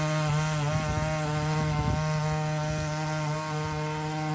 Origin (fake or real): real